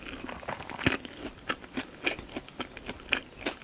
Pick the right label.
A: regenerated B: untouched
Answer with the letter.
B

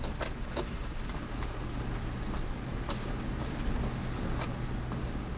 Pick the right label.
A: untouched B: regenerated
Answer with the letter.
A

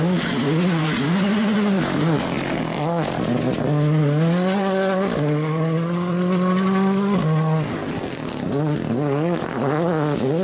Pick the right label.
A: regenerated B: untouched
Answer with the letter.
B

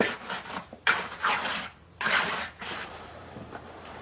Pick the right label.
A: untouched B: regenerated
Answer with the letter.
B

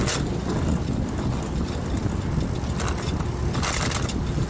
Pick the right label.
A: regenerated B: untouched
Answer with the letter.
B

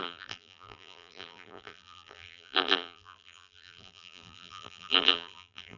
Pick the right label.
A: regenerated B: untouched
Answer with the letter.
A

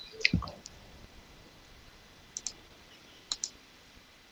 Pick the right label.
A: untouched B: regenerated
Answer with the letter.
B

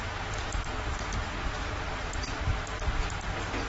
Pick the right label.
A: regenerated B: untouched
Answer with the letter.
B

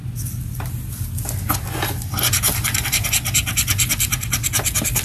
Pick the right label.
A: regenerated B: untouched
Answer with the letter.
B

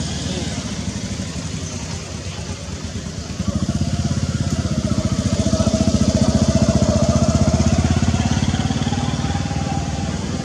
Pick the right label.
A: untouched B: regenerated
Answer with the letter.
A